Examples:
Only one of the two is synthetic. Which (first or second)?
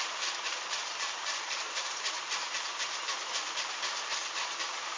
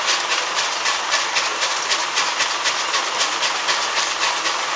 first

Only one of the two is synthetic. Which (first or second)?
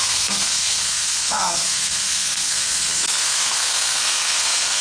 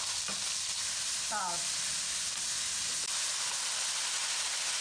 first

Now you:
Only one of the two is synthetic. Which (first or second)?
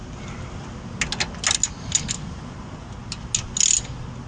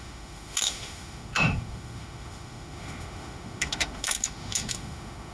second